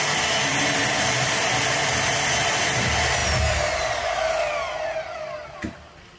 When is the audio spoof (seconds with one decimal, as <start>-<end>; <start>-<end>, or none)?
none